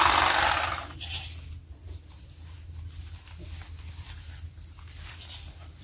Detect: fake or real real